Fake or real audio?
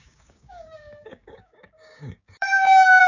fake